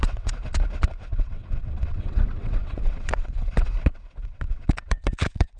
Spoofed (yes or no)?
yes